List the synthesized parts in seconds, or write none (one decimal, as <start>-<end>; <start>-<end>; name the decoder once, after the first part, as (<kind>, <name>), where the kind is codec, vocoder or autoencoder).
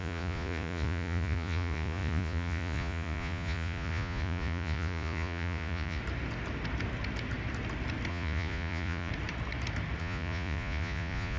0.0-6.0 (vocoder, Vocos); 8.1-9.1; 10.0-11.4